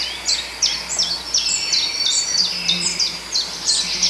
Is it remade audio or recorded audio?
recorded